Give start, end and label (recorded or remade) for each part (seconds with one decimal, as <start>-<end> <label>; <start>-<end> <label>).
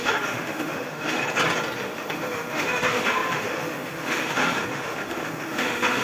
0.0-1.2 remade; 1.2-1.8 recorded; 1.8-6.0 remade